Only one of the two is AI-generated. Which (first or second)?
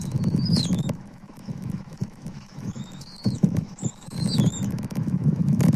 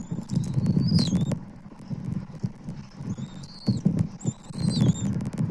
first